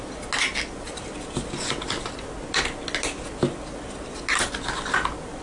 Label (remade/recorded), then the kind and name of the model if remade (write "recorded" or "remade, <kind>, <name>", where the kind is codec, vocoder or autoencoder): recorded